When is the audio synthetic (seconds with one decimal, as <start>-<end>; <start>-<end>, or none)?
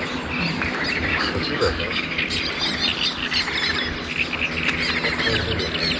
1.1-2.0